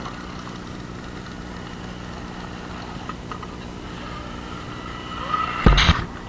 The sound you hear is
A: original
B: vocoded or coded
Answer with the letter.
A